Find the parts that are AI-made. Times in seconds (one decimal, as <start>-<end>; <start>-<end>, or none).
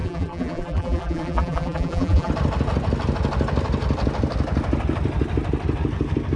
0.0-2.3